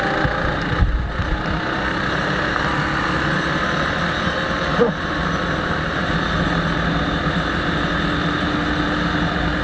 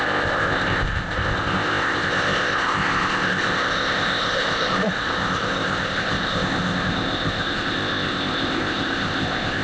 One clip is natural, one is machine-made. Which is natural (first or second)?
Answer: first